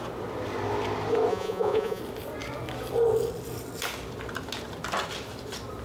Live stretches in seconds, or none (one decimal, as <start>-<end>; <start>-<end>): 0.0-1.3; 2.0-5.8